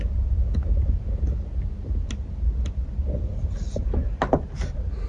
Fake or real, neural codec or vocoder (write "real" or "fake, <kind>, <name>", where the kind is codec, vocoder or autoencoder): real